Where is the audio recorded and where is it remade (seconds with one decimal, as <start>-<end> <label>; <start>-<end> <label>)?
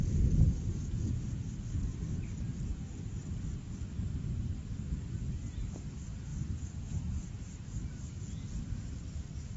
0.0-6.3 recorded; 6.3-8.1 remade; 8.1-9.6 recorded